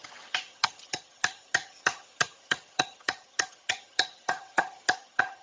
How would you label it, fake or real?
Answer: fake